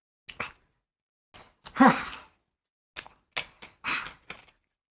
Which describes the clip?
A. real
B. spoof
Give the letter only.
A